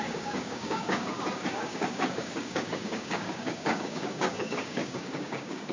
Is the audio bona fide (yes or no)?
no